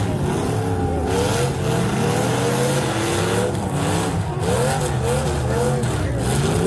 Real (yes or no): yes